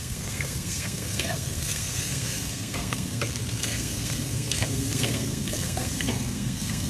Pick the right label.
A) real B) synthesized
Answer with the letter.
B